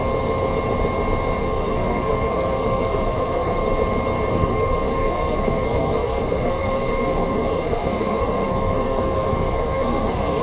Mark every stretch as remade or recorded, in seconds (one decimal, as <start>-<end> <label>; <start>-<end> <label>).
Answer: 0.0-1.4 recorded; 1.4-3.6 remade; 3.6-4.3 recorded; 4.3-10.4 remade